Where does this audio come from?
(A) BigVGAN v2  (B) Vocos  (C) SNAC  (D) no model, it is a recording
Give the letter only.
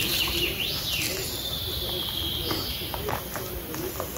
D